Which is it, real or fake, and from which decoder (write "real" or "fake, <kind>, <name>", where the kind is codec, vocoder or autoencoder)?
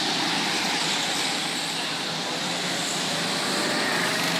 real